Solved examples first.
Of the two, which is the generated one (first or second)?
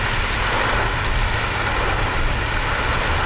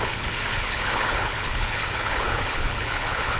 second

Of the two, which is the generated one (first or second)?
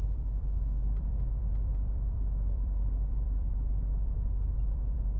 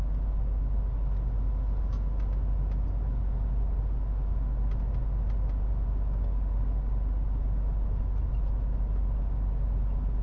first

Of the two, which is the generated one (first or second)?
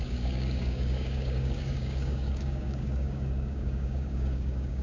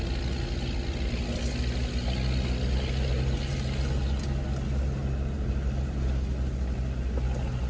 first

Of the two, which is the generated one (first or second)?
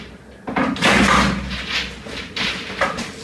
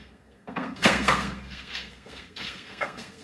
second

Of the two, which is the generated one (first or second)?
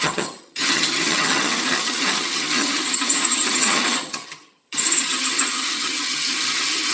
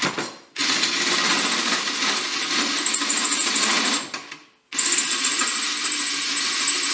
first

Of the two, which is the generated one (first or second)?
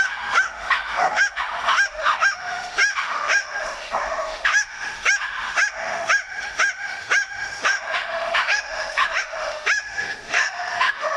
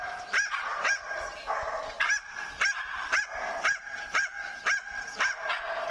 first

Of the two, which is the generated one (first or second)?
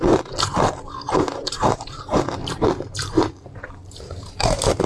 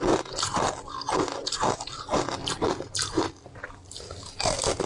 first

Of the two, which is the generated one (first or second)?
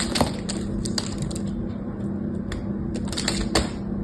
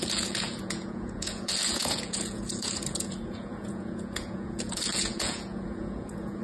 second